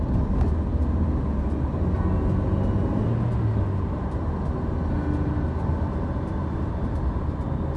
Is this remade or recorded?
recorded